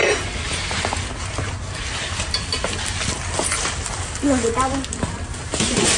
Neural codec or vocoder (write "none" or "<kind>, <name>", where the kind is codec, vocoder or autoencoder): none